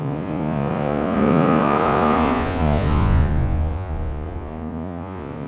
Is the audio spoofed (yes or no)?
yes